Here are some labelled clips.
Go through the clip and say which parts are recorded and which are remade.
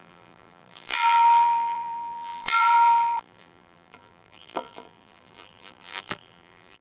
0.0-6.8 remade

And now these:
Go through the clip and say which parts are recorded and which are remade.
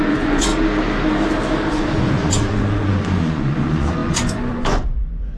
0.0-0.5 remade; 0.5-1.7 recorded; 1.7-5.4 remade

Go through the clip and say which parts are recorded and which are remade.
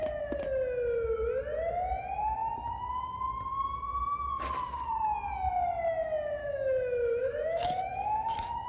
0.0-6.4 recorded; 6.4-8.7 remade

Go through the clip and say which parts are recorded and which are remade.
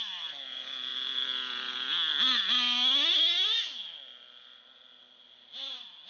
0.0-6.1 recorded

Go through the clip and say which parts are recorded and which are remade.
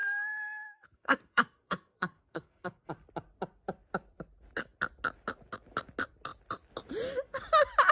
0.0-2.9 remade; 2.9-7.9 recorded